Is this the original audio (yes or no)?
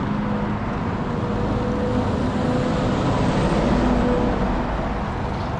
yes